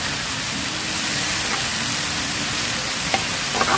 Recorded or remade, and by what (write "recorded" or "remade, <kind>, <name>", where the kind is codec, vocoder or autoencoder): recorded